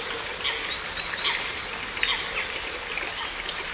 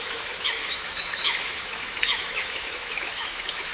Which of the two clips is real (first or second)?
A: first